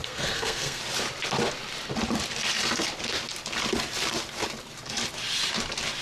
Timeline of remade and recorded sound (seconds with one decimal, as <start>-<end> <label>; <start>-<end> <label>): 0.0-0.8 remade; 0.8-6.0 recorded